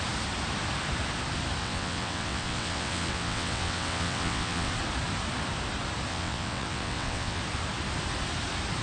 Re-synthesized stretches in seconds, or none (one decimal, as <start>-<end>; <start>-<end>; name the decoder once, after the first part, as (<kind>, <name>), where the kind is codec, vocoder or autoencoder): 1.6-4.7 (vocoder, WaveNeXt); 6.1-7.4